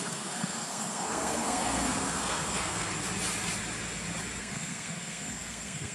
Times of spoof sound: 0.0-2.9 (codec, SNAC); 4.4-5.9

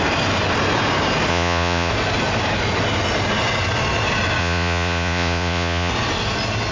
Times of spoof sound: 1.3-1.9 (vocoder, Vocos); 4.4-5.9